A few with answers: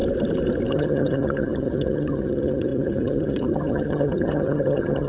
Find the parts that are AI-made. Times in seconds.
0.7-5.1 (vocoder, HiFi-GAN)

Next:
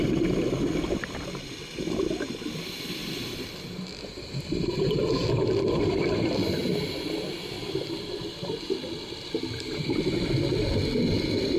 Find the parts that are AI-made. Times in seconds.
0.0-11.6 (vocoder, BigVGAN v2)

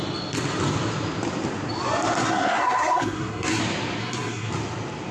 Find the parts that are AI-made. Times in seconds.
2.2-3.6 (codec, SNAC); 4.0-4.5

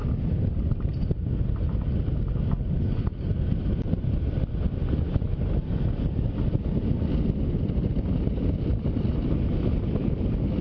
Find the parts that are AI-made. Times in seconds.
none

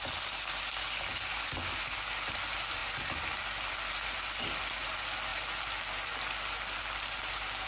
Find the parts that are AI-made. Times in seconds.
none

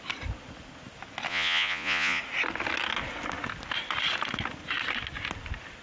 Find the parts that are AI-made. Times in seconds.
1.3-2.2 (vocoder, Vocos)

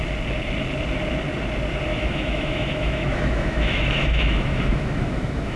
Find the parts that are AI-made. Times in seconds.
1.9-5.6 (autoencoder, DAC-VAE)